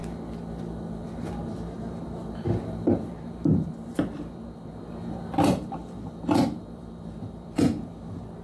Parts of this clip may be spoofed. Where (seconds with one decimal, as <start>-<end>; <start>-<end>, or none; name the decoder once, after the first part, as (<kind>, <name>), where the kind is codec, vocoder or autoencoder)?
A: 0.6-8.4 (vocoder, BigVGAN v2)